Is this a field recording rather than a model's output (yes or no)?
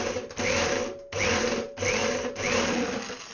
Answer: yes